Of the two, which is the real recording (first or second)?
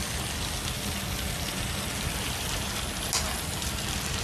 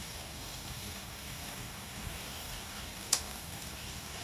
first